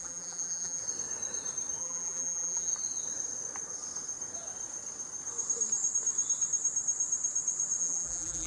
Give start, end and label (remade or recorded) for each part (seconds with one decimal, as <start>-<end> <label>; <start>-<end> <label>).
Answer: 0.0-0.8 remade; 0.8-1.8 recorded; 1.8-2.7 remade; 2.7-7.8 recorded; 7.8-8.5 remade